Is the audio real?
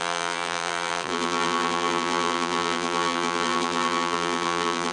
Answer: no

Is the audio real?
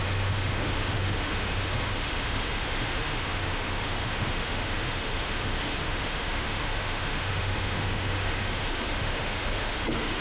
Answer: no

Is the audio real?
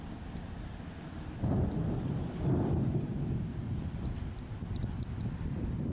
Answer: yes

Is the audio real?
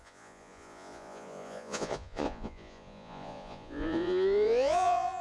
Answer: no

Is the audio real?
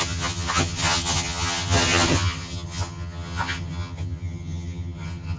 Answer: no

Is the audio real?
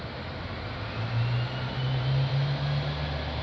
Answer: yes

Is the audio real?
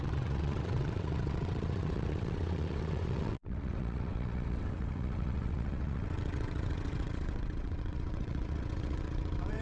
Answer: no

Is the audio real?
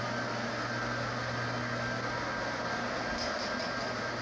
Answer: yes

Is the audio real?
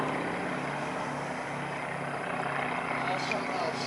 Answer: yes